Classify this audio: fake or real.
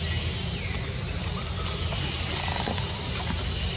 real